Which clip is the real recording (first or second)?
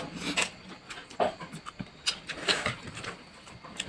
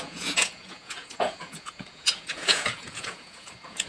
first